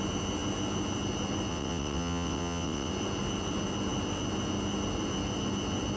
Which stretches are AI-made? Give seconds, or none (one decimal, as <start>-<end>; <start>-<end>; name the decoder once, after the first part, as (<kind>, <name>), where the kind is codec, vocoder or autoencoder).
1.5-2.9 (vocoder, WaveNeXt)